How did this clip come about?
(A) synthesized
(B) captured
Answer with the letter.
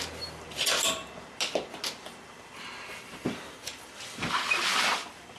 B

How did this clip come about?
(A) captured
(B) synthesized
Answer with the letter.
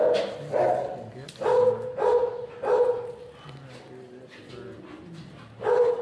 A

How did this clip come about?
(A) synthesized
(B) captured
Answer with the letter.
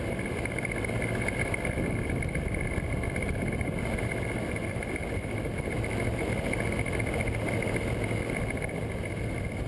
B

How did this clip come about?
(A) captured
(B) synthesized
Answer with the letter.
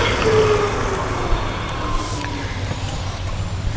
A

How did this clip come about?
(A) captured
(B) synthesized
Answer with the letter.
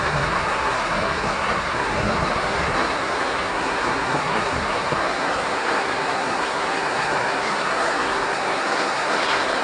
B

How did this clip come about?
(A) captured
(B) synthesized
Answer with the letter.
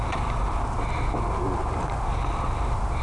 A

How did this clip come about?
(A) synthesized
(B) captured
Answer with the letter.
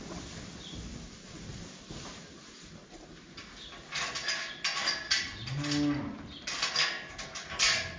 B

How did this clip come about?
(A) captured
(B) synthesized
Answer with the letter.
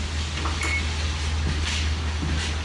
A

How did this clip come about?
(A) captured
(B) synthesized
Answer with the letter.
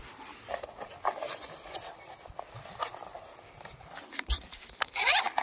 A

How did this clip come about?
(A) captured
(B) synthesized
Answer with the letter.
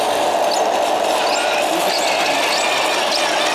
A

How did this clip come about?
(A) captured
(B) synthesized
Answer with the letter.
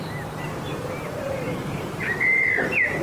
B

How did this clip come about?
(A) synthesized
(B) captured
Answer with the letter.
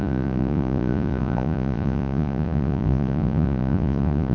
A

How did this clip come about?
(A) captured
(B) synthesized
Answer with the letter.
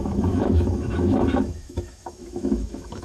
B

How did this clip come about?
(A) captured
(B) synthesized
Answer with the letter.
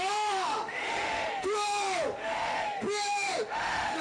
B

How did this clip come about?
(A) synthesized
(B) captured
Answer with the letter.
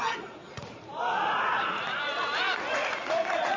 A